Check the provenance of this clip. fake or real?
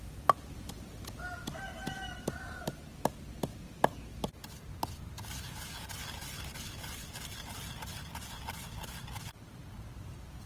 real